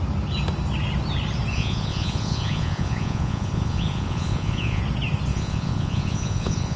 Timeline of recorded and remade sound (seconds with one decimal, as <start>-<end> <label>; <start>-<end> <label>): 0.0-1.5 recorded; 1.5-4.8 remade; 4.8-5.3 recorded; 5.3-6.8 remade

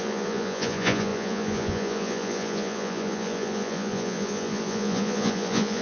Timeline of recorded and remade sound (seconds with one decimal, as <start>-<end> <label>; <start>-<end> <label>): 0.0-5.8 remade

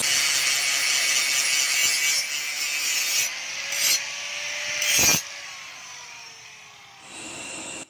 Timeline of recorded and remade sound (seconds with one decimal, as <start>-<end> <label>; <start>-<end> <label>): 0.0-7.9 recorded

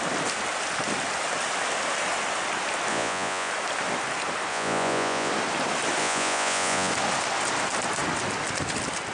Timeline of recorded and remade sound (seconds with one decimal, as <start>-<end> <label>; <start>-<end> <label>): 0.0-2.9 recorded; 2.9-3.5 remade; 3.5-4.5 recorded; 4.5-5.3 remade; 5.3-6.0 recorded; 6.0-6.9 remade; 6.9-9.1 recorded